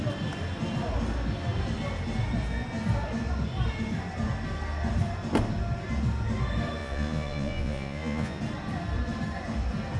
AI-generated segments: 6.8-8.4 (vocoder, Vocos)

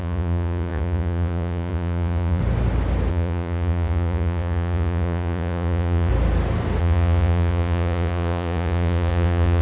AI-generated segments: 0.0-2.4 (vocoder, Vocos); 3.1-6.1; 6.8-9.6

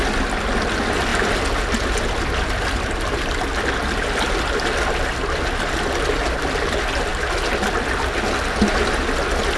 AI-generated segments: none

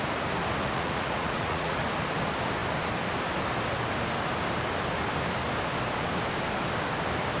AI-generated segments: 0.6-1.8 (vocoder, Vocos)

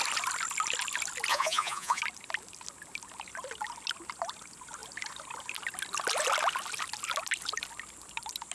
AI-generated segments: 1.3-2.0 (vocoder, Vocos)